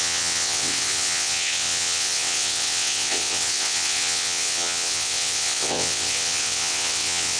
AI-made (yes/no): yes